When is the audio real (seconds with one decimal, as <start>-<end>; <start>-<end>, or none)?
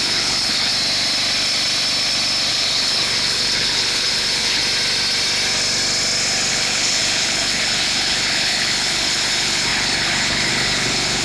0.7-2.5; 4.6-6.5